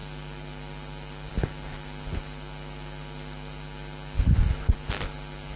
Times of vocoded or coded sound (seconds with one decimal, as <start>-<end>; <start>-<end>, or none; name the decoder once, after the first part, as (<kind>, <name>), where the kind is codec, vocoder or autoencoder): none